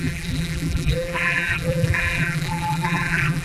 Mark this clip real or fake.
fake